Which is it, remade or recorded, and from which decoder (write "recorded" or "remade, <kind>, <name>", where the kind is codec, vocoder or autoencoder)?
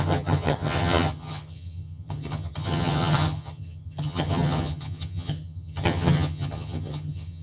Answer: remade, vocoder, HiFi-GAN